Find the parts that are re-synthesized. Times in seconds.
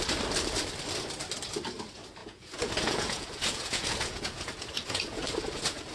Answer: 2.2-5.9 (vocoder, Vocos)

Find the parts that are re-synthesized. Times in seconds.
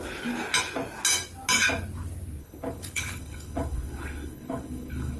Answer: 2.4-5.2 (codec, HILCodec)